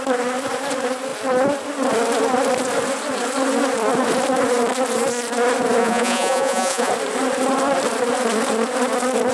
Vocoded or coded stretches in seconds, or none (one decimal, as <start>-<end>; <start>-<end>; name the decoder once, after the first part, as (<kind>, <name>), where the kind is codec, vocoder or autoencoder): 5.8-6.9 (vocoder, Vocos)